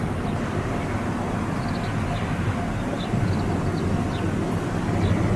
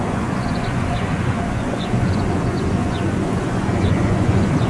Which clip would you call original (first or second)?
first